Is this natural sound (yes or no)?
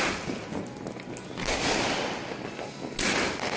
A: yes